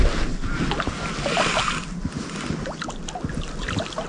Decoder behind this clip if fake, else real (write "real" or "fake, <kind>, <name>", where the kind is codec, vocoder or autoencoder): real